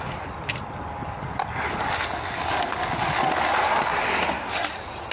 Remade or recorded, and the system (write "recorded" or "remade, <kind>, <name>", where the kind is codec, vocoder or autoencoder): recorded